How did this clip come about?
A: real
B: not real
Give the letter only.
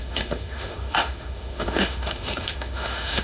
B